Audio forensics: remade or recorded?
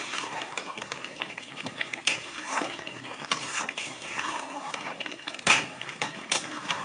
remade